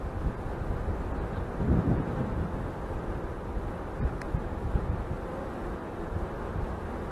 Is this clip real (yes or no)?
yes